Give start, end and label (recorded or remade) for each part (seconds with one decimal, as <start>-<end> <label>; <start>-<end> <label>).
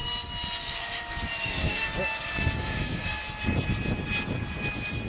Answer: 0.0-0.6 recorded; 0.6-3.2 remade; 3.2-5.1 recorded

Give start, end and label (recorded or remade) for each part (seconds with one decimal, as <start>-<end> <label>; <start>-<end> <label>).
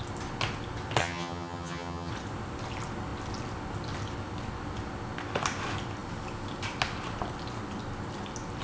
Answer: 0.0-1.0 recorded; 1.0-2.1 remade; 2.1-8.6 recorded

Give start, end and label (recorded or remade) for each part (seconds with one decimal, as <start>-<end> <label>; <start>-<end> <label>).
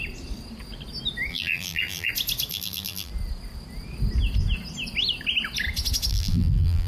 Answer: 0.0-1.3 recorded; 1.3-2.1 remade; 2.1-2.5 recorded; 2.5-3.1 remade; 3.1-6.1 recorded; 6.1-6.9 remade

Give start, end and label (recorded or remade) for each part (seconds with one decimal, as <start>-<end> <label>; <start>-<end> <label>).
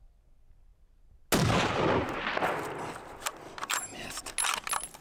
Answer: 0.0-5.0 recorded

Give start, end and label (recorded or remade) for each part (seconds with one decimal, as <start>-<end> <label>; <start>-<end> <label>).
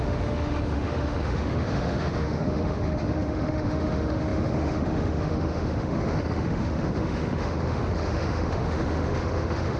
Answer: 0.0-9.8 remade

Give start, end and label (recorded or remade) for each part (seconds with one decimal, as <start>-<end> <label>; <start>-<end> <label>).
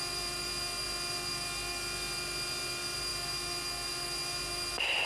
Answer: 0.0-5.1 remade